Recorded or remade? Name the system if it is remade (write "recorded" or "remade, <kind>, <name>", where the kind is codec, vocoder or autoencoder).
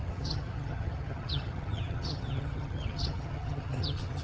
remade, vocoder, HiFi-GAN